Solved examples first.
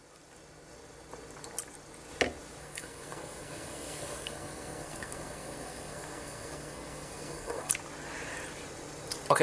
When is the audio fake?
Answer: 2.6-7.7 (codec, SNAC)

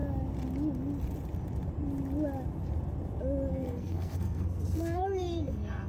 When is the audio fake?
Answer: 3.5-5.9 (codec, SNAC)